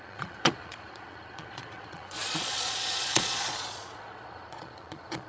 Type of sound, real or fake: fake